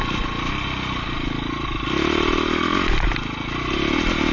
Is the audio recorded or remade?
recorded